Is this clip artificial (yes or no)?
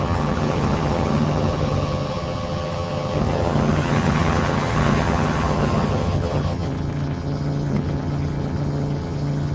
yes